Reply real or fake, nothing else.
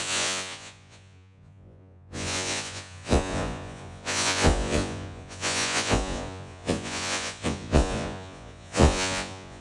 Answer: fake